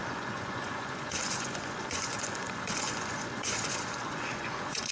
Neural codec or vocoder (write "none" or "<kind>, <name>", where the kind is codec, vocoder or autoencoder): vocoder, Vocos